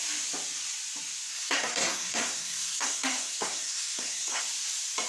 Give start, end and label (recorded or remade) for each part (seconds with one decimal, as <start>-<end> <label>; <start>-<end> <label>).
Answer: 0.0-1.3 recorded; 1.3-4.4 remade; 4.4-5.1 recorded